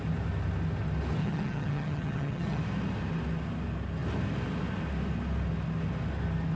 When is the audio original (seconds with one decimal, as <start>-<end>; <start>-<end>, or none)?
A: 0.0-1.2; 2.6-6.6